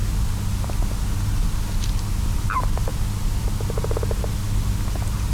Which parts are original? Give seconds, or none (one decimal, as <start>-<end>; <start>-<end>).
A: 0.0-5.3